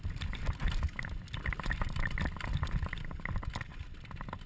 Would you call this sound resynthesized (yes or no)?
no